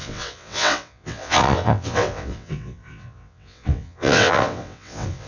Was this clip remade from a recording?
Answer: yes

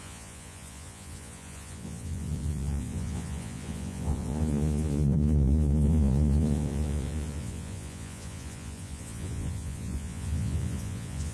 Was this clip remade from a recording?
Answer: yes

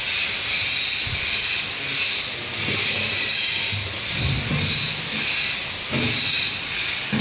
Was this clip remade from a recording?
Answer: no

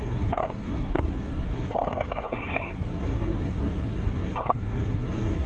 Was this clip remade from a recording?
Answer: yes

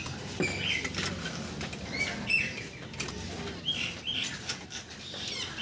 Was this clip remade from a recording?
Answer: no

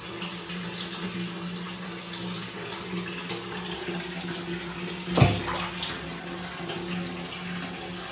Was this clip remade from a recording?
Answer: no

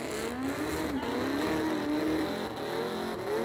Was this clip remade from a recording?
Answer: no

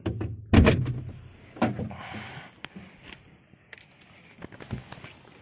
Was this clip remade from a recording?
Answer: no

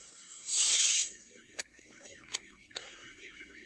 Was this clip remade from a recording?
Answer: yes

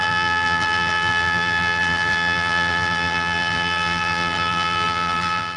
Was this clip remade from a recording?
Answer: yes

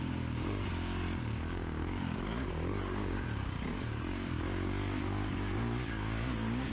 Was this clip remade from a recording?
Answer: yes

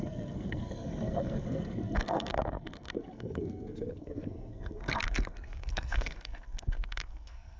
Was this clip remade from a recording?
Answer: yes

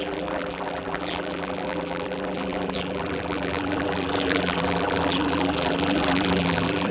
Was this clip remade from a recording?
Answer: yes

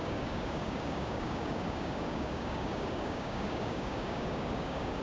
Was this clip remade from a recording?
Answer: yes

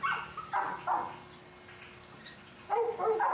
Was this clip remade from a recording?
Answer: no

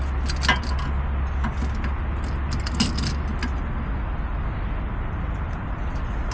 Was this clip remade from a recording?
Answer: no